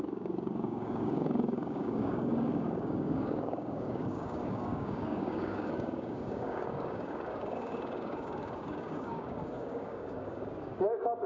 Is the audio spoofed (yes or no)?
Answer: yes